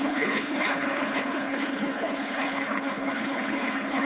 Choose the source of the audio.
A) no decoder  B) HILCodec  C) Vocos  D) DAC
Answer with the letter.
B